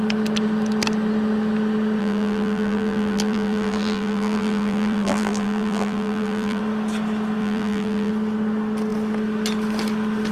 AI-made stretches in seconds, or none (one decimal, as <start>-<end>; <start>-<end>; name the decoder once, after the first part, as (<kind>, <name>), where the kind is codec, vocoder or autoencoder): 2.0-6.6 (vocoder, BigVGAN v2); 7.4-8.1